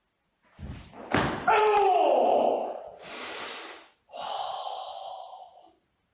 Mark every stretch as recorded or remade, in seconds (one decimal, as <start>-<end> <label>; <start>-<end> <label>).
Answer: 0.0-6.1 recorded